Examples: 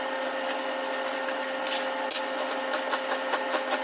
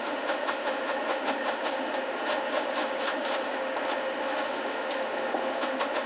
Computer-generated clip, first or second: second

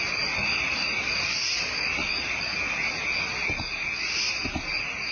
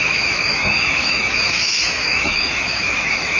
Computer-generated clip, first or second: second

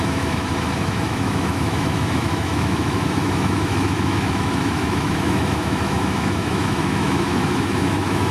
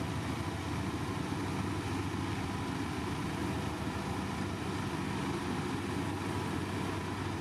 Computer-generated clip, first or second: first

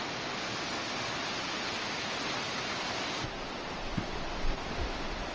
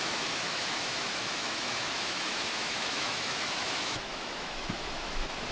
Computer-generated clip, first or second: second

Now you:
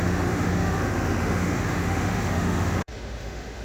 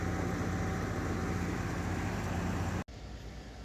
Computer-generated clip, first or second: first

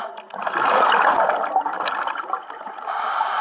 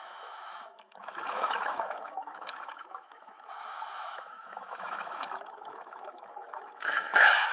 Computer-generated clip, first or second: second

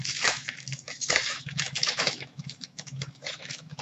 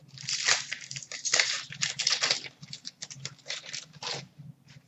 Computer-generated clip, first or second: first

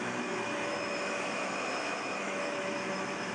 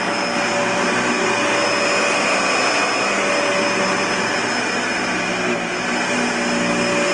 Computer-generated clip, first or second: first